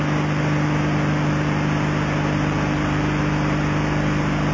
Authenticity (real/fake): real